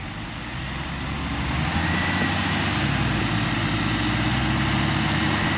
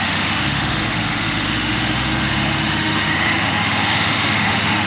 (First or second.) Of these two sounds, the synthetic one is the second